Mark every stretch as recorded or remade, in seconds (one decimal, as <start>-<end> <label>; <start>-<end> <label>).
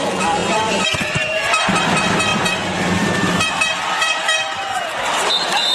0.0-4.2 remade; 4.2-5.3 recorded; 5.3-5.7 remade